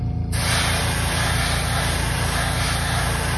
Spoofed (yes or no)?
no